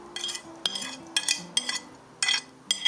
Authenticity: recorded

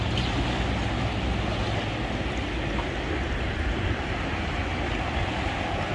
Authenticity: recorded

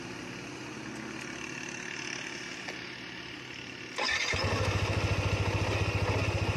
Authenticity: recorded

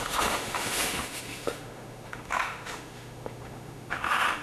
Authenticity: remade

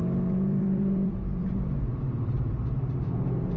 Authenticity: remade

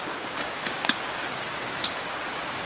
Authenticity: remade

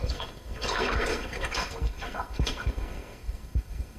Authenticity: remade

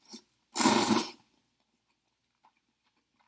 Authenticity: recorded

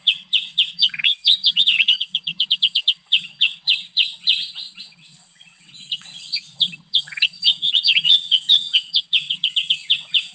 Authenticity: remade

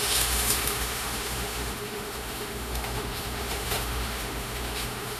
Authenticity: remade